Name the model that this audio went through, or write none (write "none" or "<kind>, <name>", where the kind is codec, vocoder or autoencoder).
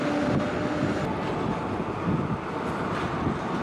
none